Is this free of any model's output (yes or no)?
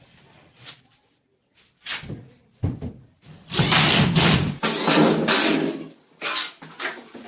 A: yes